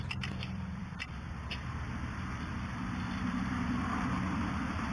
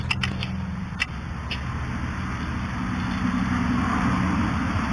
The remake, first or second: first